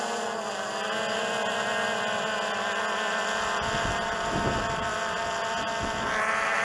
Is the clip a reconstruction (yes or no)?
no